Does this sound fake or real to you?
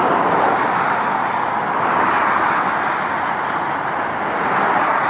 real